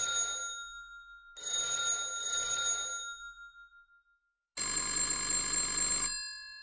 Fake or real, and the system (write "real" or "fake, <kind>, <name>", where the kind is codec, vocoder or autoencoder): real